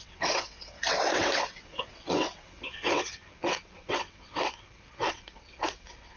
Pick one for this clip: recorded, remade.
remade